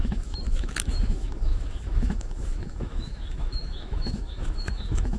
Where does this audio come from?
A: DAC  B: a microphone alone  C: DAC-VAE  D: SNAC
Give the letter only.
C